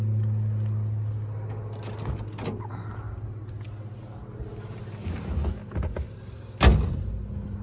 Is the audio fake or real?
real